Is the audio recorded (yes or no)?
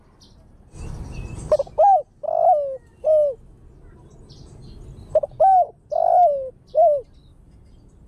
yes